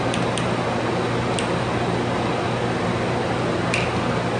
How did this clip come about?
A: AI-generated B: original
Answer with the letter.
B